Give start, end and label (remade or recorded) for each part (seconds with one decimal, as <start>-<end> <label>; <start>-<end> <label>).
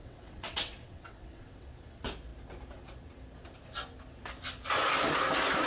0.0-1.7 remade; 1.7-5.7 recorded